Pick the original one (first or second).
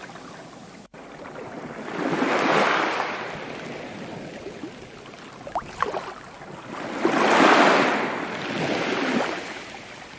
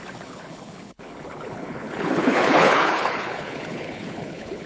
first